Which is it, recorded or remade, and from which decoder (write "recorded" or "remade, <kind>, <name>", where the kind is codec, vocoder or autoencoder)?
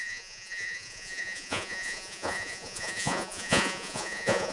remade, vocoder, Vocos